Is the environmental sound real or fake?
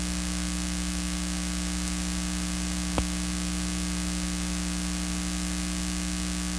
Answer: real